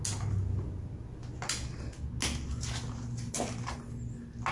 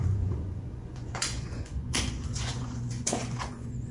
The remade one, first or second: second